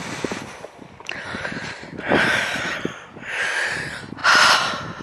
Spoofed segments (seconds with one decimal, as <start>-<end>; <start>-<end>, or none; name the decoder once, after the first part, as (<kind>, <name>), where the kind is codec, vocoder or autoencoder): 0.0-3.0 (vocoder, BigVGAN v2)